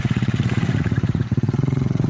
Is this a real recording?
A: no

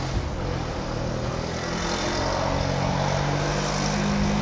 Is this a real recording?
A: yes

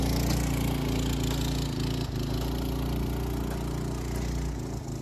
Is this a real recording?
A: yes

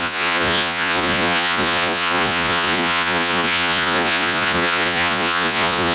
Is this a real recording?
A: no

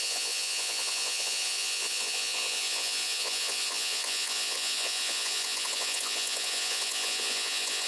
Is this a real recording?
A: no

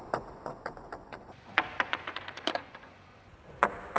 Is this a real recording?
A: no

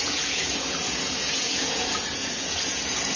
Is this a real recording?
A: no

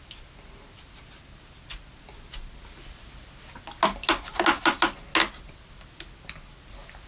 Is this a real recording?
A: yes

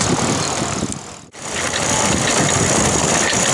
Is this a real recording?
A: yes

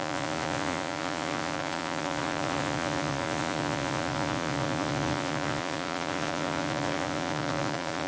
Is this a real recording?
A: no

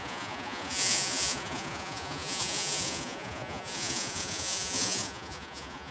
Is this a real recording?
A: no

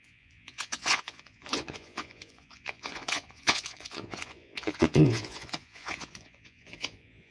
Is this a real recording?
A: no